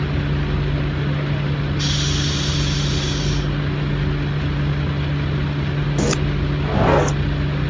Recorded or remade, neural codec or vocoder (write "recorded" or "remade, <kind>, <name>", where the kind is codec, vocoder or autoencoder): recorded